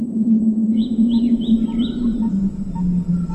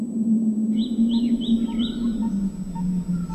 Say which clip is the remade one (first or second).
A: first